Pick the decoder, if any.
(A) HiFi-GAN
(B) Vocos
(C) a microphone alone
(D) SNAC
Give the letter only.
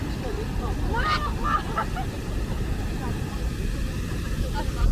C